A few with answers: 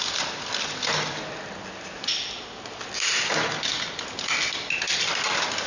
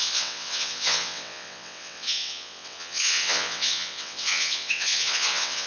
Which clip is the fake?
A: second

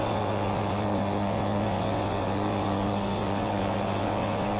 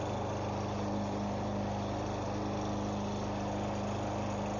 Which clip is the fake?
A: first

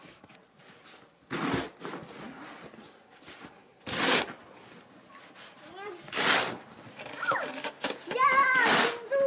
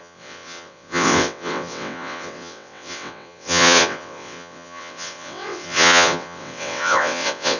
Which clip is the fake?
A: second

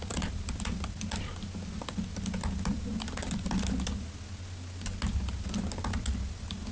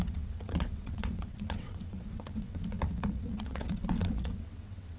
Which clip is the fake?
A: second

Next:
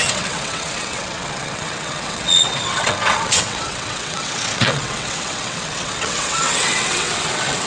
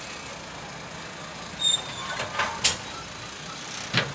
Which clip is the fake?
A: first